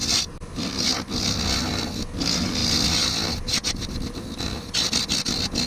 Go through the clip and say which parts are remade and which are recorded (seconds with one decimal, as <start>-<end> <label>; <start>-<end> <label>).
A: 0.0-5.7 recorded